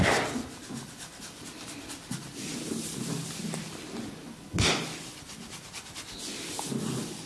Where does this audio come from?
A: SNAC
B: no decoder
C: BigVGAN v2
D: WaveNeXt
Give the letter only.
C